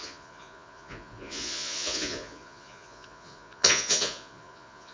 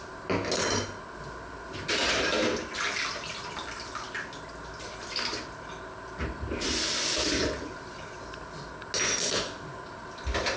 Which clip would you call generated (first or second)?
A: first